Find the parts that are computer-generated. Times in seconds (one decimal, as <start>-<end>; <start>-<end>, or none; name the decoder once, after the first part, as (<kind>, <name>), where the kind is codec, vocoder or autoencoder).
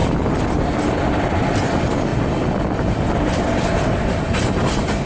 none